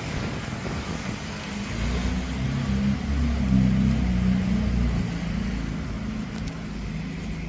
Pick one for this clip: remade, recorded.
recorded